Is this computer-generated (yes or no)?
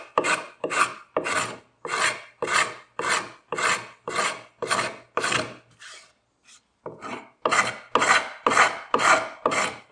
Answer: no